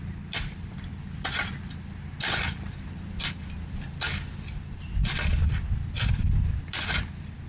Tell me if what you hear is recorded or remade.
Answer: recorded